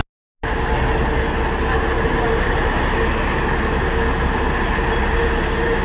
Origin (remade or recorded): recorded